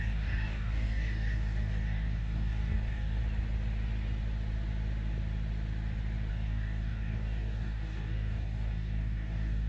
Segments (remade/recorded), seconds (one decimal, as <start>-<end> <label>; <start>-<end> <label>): 0.0-3.2 remade; 3.2-6.3 recorded; 6.3-9.7 remade